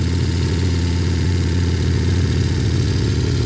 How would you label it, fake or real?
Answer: fake